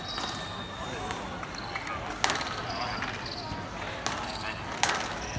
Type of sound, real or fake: real